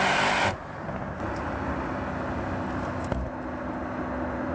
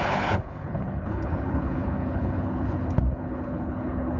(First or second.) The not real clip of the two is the second